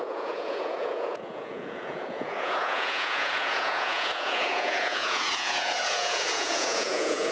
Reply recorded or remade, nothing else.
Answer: remade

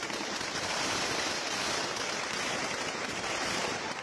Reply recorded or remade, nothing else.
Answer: remade